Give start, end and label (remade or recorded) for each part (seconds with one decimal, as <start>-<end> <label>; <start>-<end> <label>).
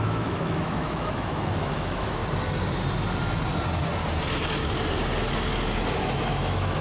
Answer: 0.0-2.2 remade; 2.2-5.9 recorded; 5.9-6.8 remade